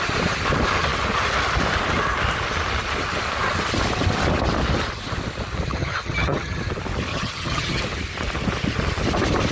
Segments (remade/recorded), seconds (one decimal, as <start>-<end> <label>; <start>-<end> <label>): 0.0-5.7 recorded; 5.7-6.6 remade; 6.6-7.1 recorded; 7.1-7.8 remade; 7.8-9.5 recorded